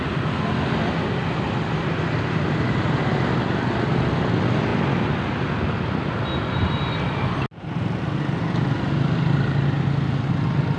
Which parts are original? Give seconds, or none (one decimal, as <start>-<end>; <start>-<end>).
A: 0.0-10.8